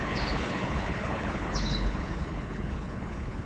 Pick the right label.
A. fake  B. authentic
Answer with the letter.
A